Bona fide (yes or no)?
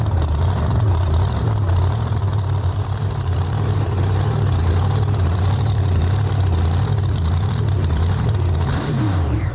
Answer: no